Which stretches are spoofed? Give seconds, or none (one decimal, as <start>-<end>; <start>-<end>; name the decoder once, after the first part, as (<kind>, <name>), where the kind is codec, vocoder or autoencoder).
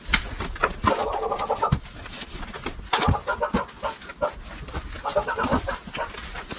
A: 1.0-3.1 (vocoder, BigVGAN v2)